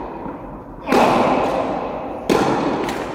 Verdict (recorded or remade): recorded